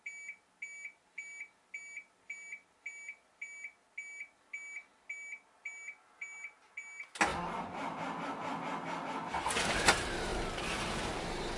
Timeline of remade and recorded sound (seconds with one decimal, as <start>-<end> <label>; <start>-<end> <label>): 0.0-11.6 recorded